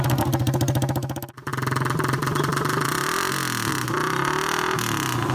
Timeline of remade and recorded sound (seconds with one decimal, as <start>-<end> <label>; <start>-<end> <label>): 0.0-5.3 recorded